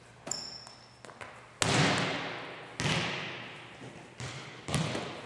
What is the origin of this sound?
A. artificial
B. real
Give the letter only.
B